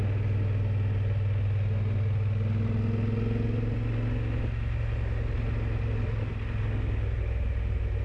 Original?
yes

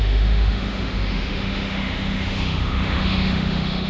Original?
no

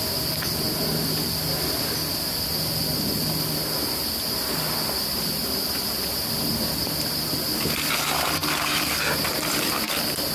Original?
yes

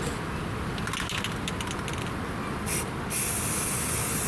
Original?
yes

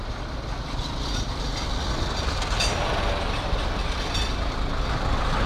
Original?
yes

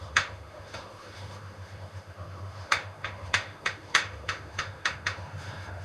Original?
no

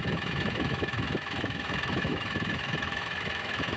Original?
no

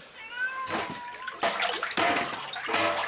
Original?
yes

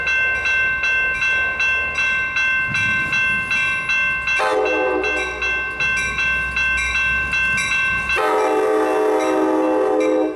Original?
yes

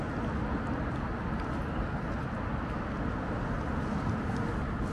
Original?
yes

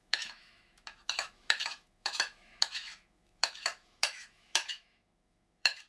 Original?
no